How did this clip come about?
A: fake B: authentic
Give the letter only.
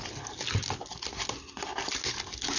B